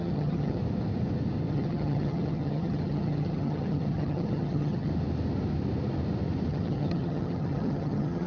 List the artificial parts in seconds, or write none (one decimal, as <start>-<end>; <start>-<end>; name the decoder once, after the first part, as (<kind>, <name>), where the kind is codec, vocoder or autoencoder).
0.0-0.6 (vocoder, HiFi-GAN); 1.5-4.9; 6.5-8.3